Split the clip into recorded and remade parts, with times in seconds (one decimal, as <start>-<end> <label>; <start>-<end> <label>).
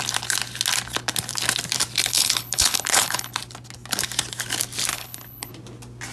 0.0-2.0 recorded; 2.0-3.3 remade; 3.3-4.9 recorded; 4.9-5.5 remade; 5.5-6.1 recorded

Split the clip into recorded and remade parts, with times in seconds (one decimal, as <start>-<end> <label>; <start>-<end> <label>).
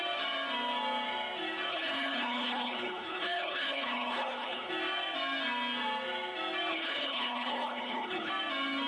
0.0-1.7 recorded; 1.7-4.7 remade; 4.7-6.7 recorded; 6.7-8.3 remade; 8.3-8.9 recorded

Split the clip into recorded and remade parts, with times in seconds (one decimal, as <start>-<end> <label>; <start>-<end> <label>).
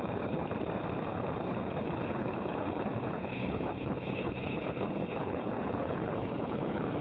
0.0-0.5 remade; 0.5-1.0 recorded; 1.0-7.0 remade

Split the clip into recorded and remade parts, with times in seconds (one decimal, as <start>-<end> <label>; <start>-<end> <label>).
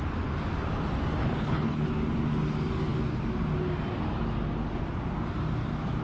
0.0-1.2 recorded; 1.2-1.9 remade; 1.9-6.0 recorded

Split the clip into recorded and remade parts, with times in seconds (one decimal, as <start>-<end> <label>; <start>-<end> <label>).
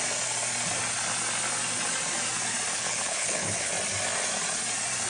0.0-2.7 recorded; 2.7-3.7 remade; 3.7-5.1 recorded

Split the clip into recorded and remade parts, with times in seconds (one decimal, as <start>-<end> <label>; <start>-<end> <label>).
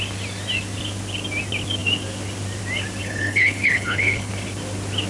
0.0-3.0 recorded; 3.0-4.3 remade; 4.3-5.1 recorded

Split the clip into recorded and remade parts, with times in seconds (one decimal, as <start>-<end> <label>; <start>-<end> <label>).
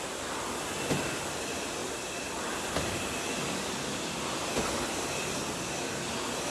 0.0-6.5 recorded